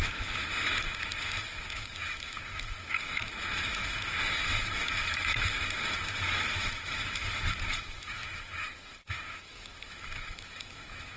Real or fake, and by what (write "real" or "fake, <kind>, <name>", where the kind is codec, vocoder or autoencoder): fake, autoencoder, DAC-VAE